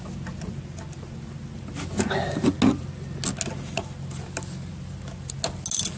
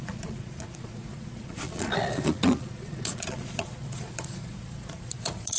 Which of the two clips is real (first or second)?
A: first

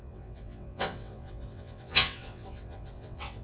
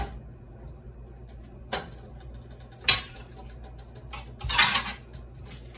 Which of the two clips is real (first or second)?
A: second